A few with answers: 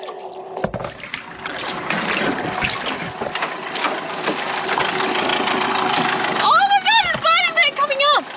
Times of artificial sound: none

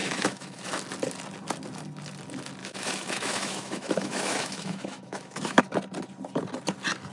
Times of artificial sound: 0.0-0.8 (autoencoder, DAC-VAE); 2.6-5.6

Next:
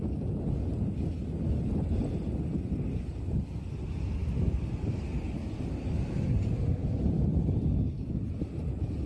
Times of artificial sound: none

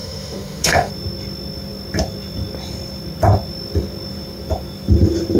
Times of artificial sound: 0.0-0.9 (autoencoder, DAC-VAE)

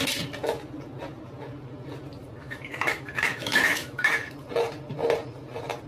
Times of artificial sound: 2.4-4.3 (autoencoder, DAC-VAE)